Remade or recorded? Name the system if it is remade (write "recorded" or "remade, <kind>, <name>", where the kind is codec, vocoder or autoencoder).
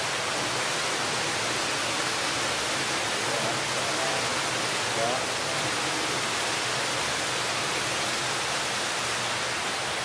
recorded